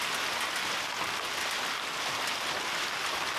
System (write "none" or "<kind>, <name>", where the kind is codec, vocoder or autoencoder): none